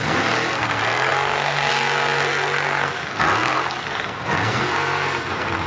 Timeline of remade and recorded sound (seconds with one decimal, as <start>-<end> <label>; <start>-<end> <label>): 0.0-5.7 remade